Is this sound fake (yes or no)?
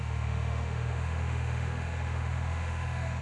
yes